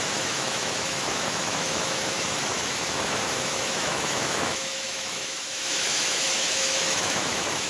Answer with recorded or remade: remade